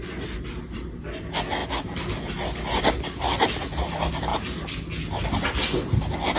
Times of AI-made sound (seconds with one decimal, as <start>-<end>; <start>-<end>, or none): none